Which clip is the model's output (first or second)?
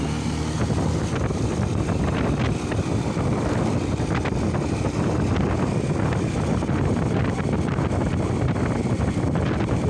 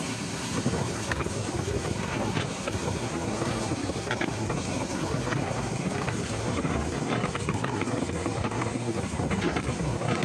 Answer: second